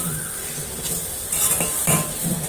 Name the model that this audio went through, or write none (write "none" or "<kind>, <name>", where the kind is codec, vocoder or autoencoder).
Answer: vocoder, BigVGAN v2